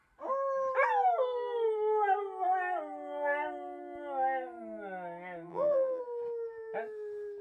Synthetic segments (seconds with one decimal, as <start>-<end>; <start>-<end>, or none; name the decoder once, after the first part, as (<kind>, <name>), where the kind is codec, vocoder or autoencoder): 5.5-6.0 (vocoder, BigVGAN v2)